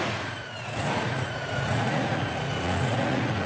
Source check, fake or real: fake